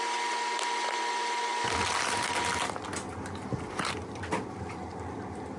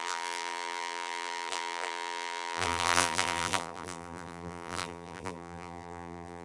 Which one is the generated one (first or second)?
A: second